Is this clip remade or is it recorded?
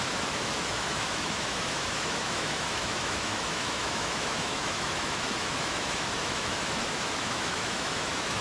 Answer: remade